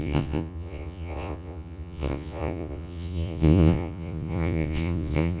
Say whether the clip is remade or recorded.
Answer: remade